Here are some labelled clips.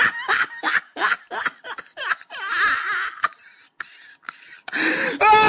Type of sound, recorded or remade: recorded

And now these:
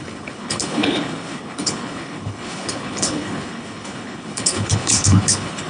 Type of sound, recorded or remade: remade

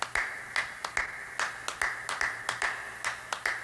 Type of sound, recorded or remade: recorded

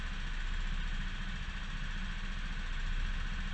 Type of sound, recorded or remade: recorded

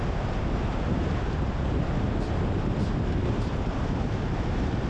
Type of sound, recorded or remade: recorded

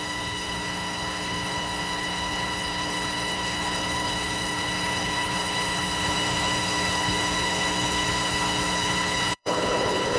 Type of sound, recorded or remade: remade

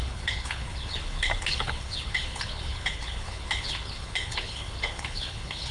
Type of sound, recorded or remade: remade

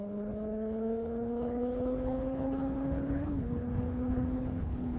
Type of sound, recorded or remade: remade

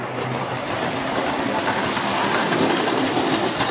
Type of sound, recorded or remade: recorded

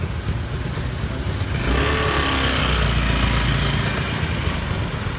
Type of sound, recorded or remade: recorded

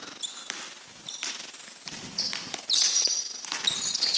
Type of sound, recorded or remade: recorded